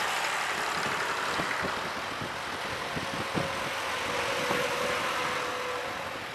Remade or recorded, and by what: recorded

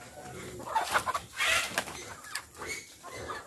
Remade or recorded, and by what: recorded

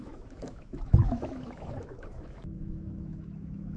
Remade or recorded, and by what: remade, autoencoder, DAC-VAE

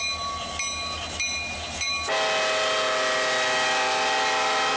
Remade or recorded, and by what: recorded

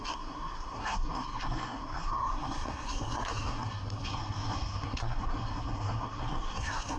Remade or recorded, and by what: remade, codec, SNAC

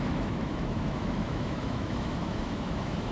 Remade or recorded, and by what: remade, autoencoder, DAC-VAE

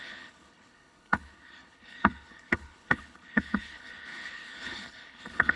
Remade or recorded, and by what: remade, codec, HILCodec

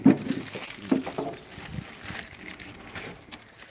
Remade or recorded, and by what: recorded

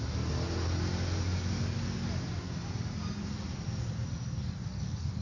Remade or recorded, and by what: recorded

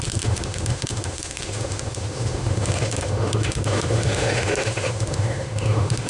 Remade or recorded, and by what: remade, autoencoder, DAC-VAE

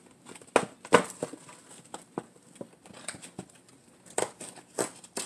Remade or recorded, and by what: recorded